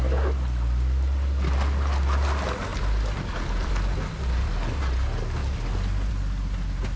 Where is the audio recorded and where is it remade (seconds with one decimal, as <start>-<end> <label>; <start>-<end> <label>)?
0.0-2.7 recorded; 2.7-4.1 remade; 4.1-7.0 recorded